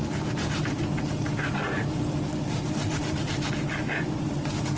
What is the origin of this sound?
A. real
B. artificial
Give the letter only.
B